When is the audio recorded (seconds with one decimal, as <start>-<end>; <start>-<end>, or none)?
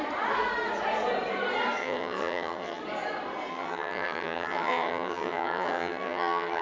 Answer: 0.0-1.8; 2.8-3.5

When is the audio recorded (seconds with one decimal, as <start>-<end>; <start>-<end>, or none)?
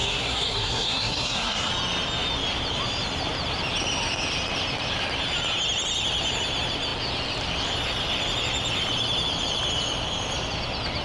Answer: 1.7-11.0